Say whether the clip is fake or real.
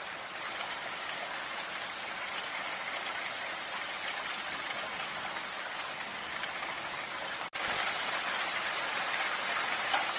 real